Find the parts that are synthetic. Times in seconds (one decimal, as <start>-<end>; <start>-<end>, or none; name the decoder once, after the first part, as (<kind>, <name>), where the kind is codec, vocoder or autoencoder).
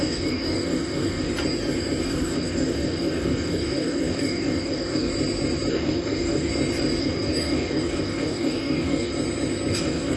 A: 0.0-1.3 (codec, DAC); 2.0-5.1; 5.7-6.5; 7.0-9.1; 9.7-10.2